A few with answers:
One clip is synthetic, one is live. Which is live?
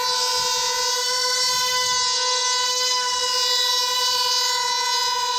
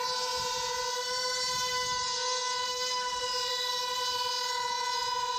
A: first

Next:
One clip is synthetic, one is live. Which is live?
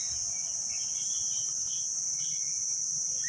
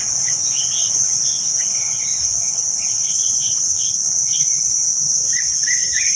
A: first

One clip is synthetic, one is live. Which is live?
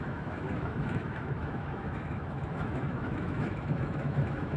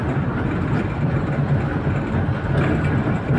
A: second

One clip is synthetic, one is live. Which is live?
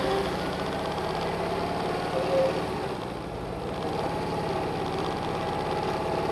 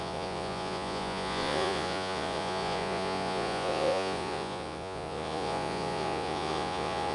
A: first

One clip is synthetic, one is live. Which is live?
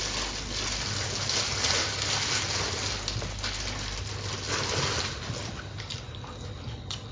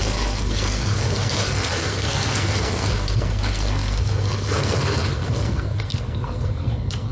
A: first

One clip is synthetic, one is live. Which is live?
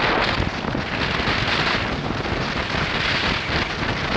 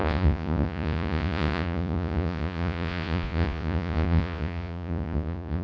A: first